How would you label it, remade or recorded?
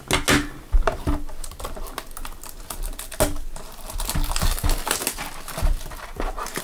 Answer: recorded